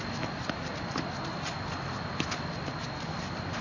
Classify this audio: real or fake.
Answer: real